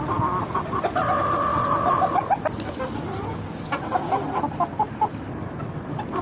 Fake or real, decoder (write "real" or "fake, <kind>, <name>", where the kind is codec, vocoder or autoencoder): real